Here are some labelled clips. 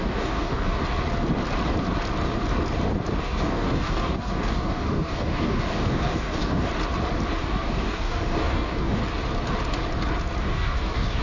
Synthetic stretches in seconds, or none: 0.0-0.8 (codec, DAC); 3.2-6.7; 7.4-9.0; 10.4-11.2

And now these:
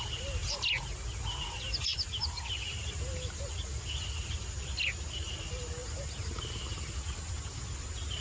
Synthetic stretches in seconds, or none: none

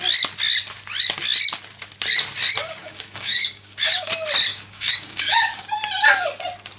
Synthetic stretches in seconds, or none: 2.6-4.1 (codec, DAC); 4.5-5.7